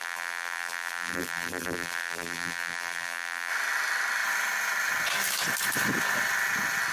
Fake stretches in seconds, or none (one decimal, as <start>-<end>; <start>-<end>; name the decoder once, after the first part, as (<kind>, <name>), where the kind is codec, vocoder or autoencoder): 0.0-3.5 (vocoder, BigVGAN v2)